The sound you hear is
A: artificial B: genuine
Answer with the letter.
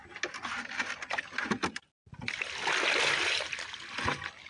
B